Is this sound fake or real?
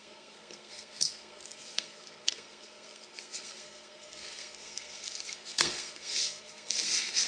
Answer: fake